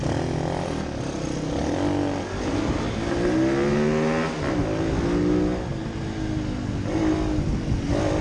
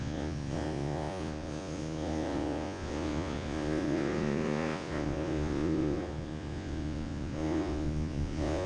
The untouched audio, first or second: first